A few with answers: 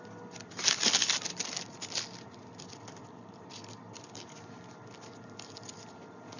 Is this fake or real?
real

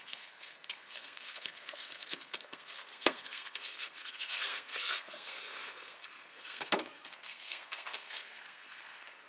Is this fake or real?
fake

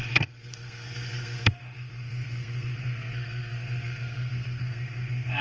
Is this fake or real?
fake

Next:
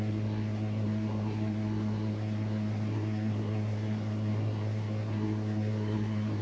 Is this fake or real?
fake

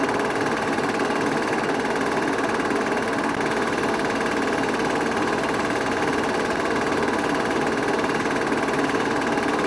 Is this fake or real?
real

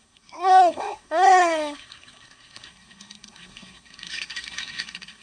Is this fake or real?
fake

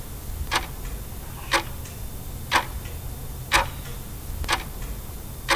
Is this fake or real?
real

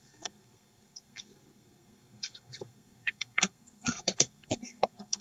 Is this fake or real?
fake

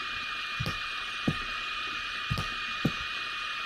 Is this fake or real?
real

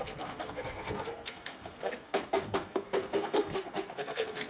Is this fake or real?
fake